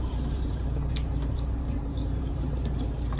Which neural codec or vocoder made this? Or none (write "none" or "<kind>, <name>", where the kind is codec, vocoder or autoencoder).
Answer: vocoder, BigVGAN v2